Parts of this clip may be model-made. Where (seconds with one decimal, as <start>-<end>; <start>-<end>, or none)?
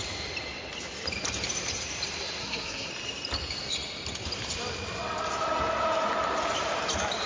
2.4-2.9